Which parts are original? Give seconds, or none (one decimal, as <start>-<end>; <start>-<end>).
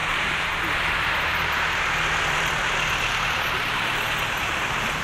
none